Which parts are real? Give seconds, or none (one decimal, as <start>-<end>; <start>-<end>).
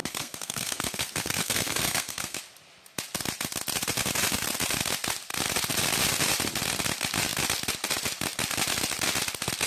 2.4-9.7